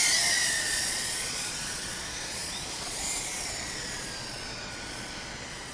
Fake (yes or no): yes